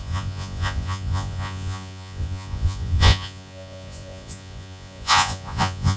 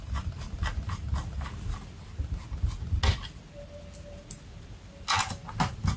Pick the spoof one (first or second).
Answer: first